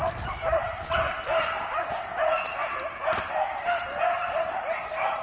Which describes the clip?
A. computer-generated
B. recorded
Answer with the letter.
B